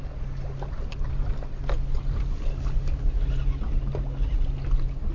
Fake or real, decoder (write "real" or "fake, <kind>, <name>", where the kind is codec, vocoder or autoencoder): real